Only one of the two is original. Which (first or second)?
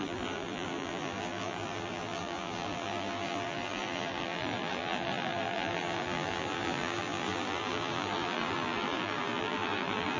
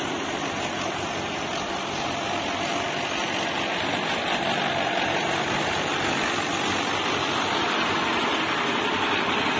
second